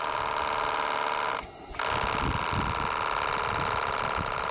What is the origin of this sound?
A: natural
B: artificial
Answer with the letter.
A